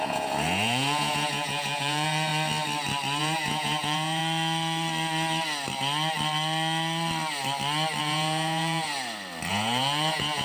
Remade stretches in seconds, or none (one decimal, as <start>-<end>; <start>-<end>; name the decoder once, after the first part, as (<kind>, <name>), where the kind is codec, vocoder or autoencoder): 0.0-2.3 (vocoder, Vocos); 3.2-4.2; 8.0-8.9; 9.5-10.4